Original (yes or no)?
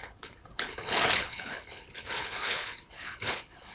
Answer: no